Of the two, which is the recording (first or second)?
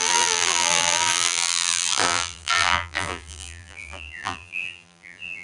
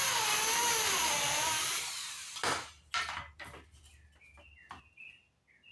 second